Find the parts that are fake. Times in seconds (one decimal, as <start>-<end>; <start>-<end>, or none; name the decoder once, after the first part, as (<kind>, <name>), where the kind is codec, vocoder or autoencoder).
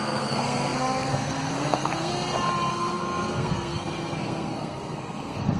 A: 0.0-2.1 (codec, SNAC); 2.7-5.6